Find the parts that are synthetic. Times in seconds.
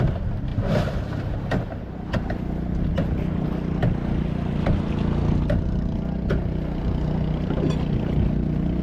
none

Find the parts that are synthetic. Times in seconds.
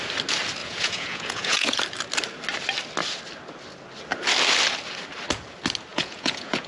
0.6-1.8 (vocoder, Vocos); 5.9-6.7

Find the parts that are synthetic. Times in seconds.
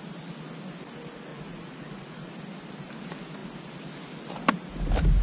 1.3-2.3 (vocoder, Vocos)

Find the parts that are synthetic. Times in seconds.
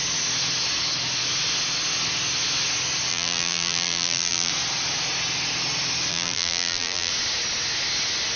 3.1-4.5 (vocoder, BigVGAN v2); 6.1-7.1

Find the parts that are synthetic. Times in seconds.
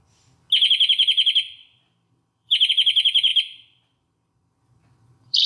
1.6-2.7 (vocoder, BigVGAN v2); 3.3-5.5